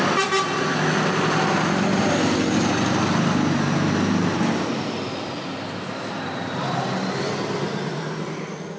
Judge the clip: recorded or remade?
recorded